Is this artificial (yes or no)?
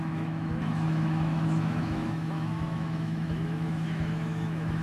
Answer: yes